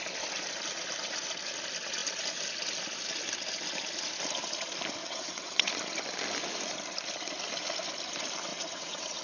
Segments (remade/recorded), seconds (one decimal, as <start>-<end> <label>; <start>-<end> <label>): 0.0-5.0 recorded; 5.0-5.7 remade; 5.7-8.5 recorded; 8.5-9.2 remade